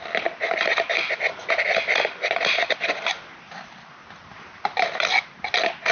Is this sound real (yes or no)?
yes